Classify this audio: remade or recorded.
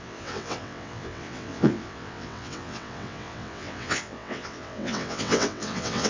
remade